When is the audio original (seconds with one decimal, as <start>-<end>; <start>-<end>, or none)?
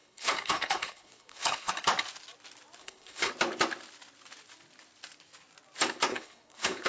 1.7-2.8; 3.3-6.1